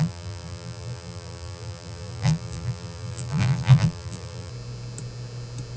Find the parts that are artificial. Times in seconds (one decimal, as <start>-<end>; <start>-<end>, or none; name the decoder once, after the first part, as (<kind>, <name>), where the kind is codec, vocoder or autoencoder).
0.0-4.5 (vocoder, BigVGAN v2)